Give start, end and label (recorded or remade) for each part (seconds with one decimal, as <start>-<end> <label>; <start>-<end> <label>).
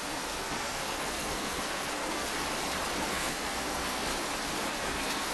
0.0-2.3 remade; 2.3-3.1 recorded; 3.1-4.1 remade; 4.1-4.7 recorded; 4.7-5.3 remade